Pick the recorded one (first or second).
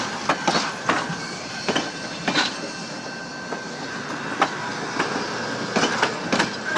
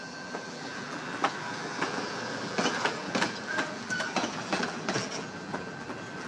first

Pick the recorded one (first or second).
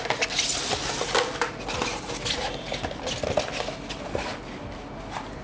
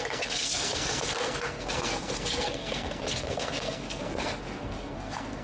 first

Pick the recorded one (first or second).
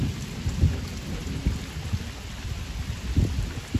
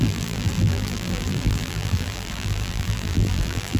first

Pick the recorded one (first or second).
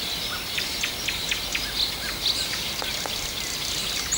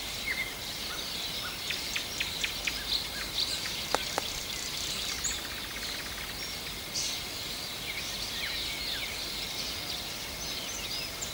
first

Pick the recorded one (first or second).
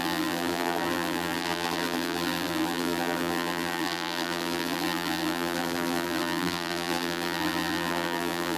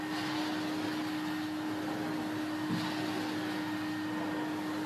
second